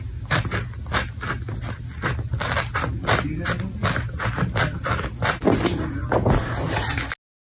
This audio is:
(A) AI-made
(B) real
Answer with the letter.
B